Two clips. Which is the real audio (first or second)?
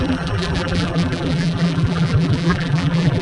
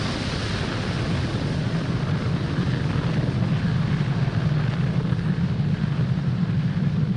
second